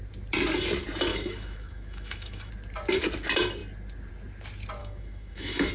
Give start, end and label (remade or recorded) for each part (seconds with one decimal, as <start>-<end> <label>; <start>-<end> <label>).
0.0-1.1 recorded; 1.1-2.5 remade; 2.5-4.8 recorded; 4.8-5.7 remade